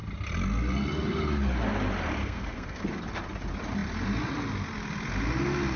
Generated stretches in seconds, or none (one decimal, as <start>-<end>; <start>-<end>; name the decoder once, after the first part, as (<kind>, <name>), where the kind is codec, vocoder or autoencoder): 2.2-2.8 (codec, SNAC)